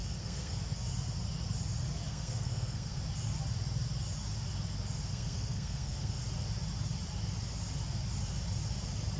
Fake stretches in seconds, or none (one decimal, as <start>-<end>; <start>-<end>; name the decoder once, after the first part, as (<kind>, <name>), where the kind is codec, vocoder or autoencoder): 0.0-0.6 (codec, SNAC); 2.1-3.0; 5.1-6.2